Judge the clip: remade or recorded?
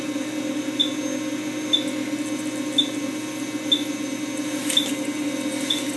recorded